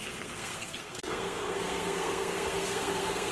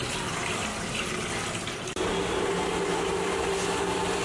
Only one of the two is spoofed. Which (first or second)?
first